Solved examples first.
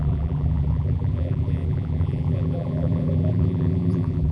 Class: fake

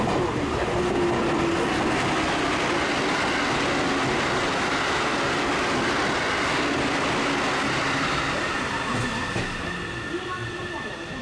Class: real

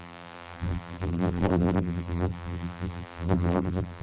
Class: fake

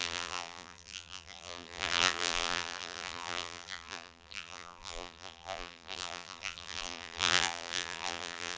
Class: fake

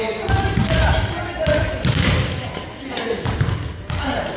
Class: real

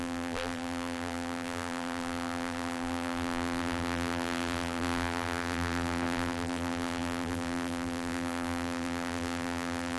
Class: fake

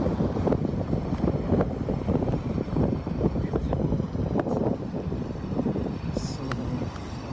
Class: fake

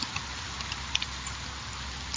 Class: real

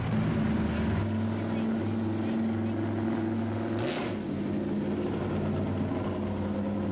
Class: real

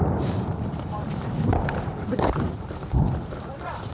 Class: fake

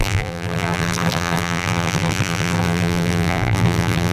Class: fake